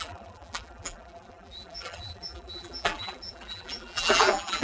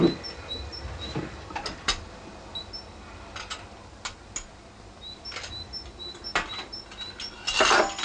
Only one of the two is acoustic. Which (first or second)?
second